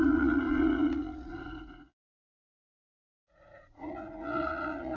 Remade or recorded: remade